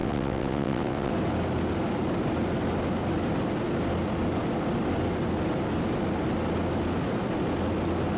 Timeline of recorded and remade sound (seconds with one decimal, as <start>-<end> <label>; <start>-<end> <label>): 0.0-1.1 remade; 1.1-8.2 recorded